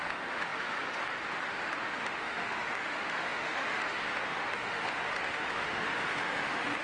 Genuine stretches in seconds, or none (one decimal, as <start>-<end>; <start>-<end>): none